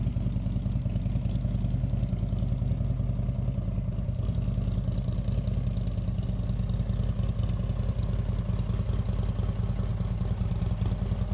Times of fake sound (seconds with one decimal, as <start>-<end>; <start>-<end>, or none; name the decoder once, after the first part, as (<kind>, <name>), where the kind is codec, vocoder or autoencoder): none